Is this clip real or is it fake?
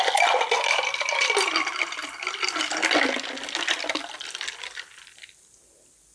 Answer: real